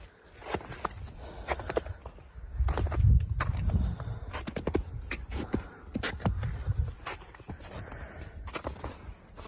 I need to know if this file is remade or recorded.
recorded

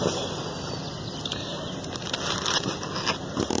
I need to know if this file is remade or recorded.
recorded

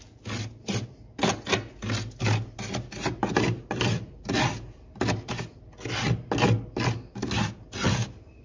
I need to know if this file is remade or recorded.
recorded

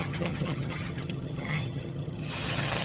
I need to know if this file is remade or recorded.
remade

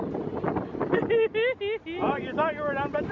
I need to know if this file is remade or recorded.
recorded